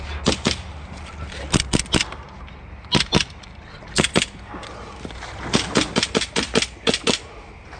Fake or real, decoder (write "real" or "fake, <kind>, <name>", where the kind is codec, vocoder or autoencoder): real